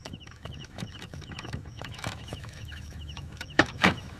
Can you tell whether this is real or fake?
fake